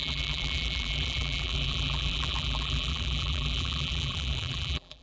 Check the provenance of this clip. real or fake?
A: fake